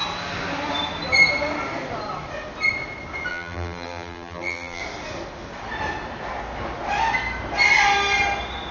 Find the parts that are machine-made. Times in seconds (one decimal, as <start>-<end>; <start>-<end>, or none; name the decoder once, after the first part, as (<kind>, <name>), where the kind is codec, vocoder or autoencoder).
3.3-4.8 (vocoder, BigVGAN v2)